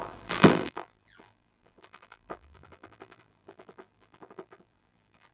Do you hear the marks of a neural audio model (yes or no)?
yes